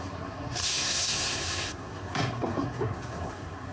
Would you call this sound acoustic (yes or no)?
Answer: no